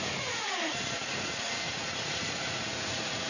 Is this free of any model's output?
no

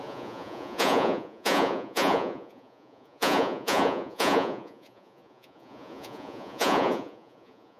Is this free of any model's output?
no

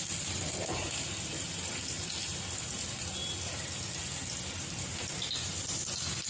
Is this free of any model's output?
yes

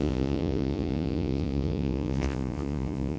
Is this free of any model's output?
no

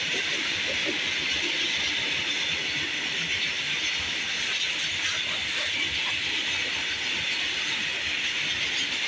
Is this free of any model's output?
yes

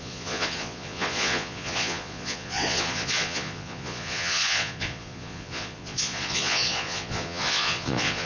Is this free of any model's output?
no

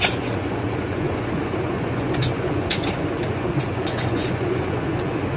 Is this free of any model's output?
no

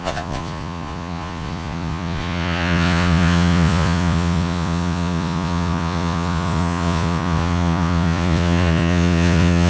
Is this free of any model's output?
no